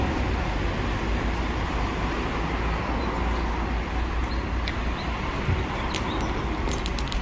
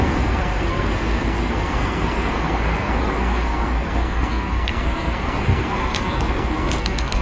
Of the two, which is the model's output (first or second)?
second